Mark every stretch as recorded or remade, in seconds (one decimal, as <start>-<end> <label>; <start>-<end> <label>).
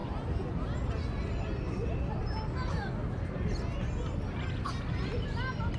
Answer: 0.0-5.8 recorded